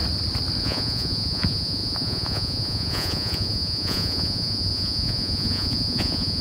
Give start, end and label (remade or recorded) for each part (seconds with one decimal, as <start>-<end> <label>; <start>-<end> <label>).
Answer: 0.0-0.6 recorded; 0.6-6.4 remade

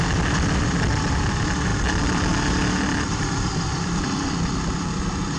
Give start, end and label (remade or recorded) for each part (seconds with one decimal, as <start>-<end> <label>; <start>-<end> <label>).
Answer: 0.0-5.4 remade

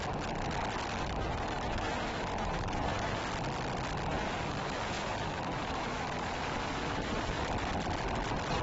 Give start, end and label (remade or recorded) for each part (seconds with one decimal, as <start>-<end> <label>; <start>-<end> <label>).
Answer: 0.0-1.0 recorded; 1.0-3.2 remade; 3.2-4.1 recorded; 4.1-7.7 remade; 7.7-8.6 recorded

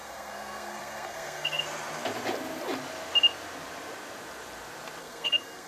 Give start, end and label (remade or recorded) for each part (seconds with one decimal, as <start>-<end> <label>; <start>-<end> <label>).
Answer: 0.0-1.6 remade; 1.6-5.0 recorded; 5.0-5.7 remade

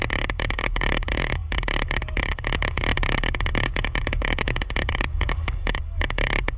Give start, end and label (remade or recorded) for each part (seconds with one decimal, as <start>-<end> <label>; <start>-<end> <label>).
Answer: 0.0-6.6 remade

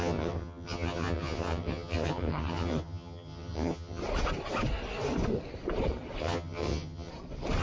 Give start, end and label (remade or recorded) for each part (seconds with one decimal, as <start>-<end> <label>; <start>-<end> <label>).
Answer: 0.0-4.0 remade; 4.0-6.2 recorded; 6.2-7.1 remade; 7.1-7.6 recorded

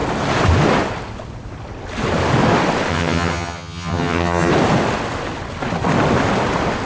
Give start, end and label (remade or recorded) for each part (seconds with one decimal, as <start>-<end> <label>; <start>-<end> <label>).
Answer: 0.0-2.9 recorded; 2.9-4.5 remade; 4.5-6.9 recorded